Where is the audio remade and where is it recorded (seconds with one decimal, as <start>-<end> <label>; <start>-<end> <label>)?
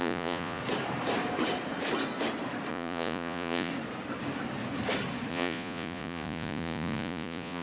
0.0-0.6 remade; 0.6-2.7 recorded; 2.7-3.7 remade; 3.7-5.3 recorded; 5.3-7.6 remade